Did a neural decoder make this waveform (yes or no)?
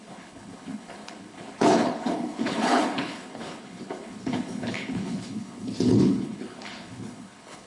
yes